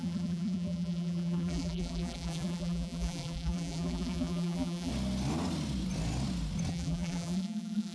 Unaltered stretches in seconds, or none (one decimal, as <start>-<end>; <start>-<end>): 4.9-6.7